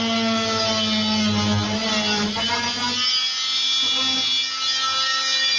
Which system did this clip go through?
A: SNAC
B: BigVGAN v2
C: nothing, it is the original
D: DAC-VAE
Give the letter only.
C